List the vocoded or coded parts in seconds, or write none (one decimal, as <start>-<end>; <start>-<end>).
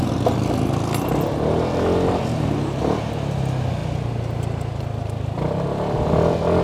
none